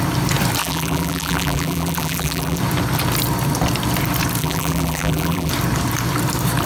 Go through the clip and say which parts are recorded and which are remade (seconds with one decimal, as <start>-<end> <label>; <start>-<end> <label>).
0.0-0.6 recorded; 0.6-2.6 remade; 2.6-4.4 recorded; 4.4-5.5 remade; 5.5-6.7 recorded